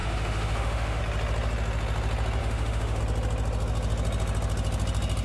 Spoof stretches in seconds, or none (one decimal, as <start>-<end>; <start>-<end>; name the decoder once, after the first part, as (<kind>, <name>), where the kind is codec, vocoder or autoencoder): 0.0-1.0 (autoencoder, DAC-VAE); 2.4-3.0